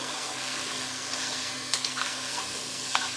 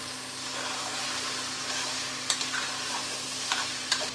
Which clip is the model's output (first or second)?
first